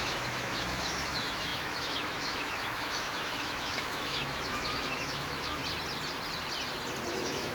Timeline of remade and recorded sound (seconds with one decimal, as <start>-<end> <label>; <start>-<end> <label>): 0.0-5.6 remade; 5.6-7.1 recorded; 7.1-7.5 remade